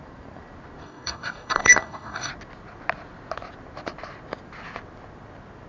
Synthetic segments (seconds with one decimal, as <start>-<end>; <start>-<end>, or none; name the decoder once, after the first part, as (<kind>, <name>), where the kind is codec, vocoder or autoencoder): 0.8-2.3 (codec, DAC)